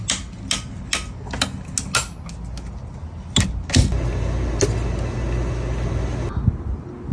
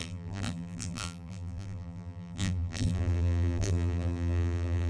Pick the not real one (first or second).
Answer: second